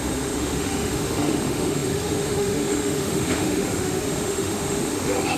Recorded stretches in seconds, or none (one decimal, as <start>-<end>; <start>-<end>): none